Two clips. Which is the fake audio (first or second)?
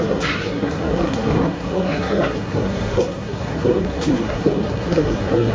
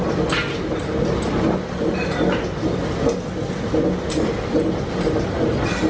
first